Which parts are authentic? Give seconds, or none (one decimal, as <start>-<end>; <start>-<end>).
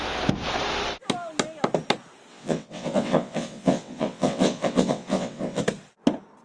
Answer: 0.0-2.3; 5.6-6.4